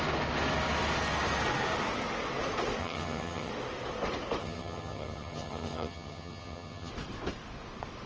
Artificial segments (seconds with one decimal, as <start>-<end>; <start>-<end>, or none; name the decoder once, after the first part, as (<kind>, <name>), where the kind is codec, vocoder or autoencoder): 2.8-3.5 (vocoder, HiFi-GAN); 4.4-6.9